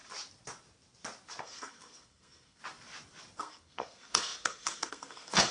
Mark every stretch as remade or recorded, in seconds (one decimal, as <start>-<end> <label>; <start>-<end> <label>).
0.0-1.4 recorded; 1.4-2.6 remade; 2.6-3.4 recorded; 3.4-5.5 remade